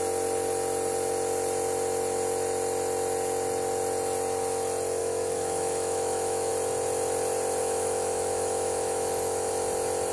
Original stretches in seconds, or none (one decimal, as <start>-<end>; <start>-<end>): 0.0-5.0; 6.5-7.6; 9.5-10.1

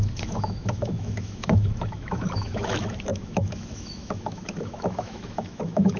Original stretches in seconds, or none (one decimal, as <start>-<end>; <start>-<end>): none

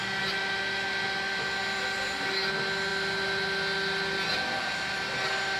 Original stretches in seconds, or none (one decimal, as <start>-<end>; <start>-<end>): 0.0-5.6

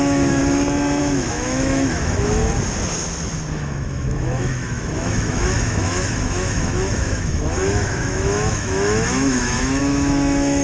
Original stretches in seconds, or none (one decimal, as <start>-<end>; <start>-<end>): 0.4-1.0; 2.4-3.5

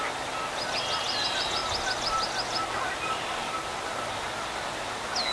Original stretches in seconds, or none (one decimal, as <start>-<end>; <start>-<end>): 0.0-5.3

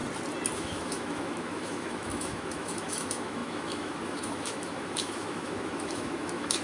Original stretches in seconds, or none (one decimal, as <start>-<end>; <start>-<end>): 0.0-0.5

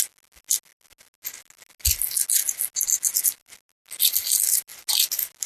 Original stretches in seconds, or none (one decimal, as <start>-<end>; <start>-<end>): 0.0-5.5